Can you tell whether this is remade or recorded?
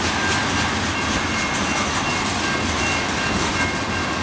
recorded